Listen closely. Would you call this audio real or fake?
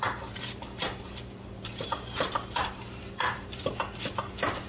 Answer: fake